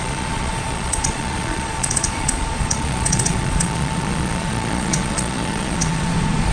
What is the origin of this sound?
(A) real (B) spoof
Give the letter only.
B